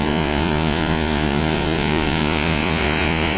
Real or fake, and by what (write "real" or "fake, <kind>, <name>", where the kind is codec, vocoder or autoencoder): fake, vocoder, Vocos